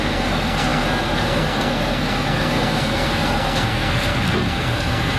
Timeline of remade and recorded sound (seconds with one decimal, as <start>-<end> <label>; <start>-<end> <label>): 0.0-5.2 remade